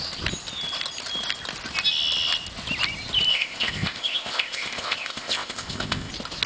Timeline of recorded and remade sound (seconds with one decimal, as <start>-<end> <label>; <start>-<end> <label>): 0.0-3.3 recorded; 3.3-6.1 remade; 6.1-6.5 recorded